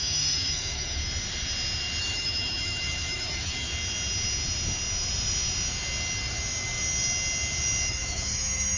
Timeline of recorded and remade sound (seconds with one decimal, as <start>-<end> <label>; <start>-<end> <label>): 0.0-1.0 remade; 1.0-2.0 recorded; 2.0-3.7 remade; 3.7-7.9 recorded; 7.9-8.8 remade